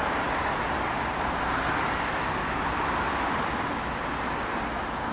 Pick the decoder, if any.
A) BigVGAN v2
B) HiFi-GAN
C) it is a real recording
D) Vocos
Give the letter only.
C